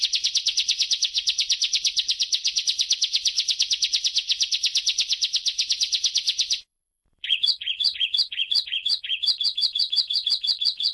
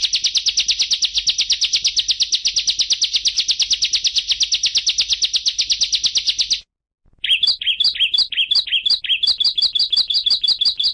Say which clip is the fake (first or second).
first